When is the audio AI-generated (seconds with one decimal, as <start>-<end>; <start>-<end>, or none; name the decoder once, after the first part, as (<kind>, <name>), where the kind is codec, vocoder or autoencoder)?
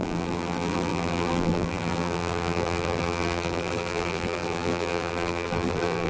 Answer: 0.0-6.1 (vocoder, BigVGAN v2)